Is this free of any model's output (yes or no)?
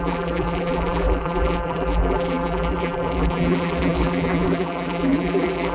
no